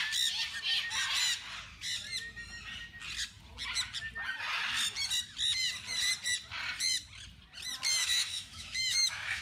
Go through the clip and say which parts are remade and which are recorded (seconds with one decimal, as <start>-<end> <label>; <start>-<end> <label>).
0.0-8.0 recorded; 8.0-9.4 remade